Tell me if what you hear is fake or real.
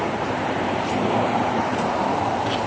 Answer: fake